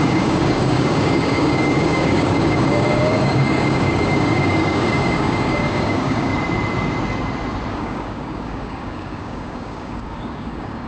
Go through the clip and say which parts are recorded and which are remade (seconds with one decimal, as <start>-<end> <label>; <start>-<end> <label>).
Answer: 0.0-6.3 remade; 6.3-7.7 recorded; 7.7-10.9 remade